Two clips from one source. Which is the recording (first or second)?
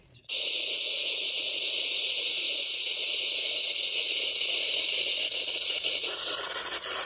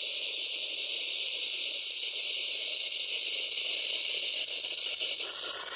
second